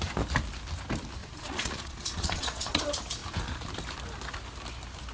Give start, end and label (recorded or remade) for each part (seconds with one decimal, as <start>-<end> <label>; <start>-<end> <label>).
0.0-1.2 recorded; 1.2-2.8 remade; 2.8-5.1 recorded